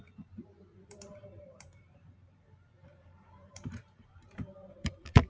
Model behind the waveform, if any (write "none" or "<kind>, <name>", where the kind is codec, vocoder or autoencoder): vocoder, BigVGAN v2